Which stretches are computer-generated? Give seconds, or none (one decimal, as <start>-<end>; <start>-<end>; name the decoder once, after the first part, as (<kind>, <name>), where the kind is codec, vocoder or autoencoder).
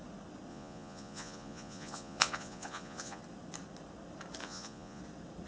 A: 0.5-3.2 (vocoder, Vocos); 4.4-5.0